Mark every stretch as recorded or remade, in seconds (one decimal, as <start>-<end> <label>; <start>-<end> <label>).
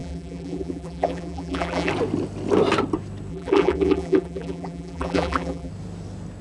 0.0-1.9 remade; 1.9-3.3 recorded; 3.3-5.7 remade; 5.7-6.4 recorded